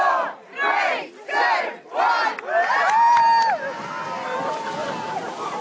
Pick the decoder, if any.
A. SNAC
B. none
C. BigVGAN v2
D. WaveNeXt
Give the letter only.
B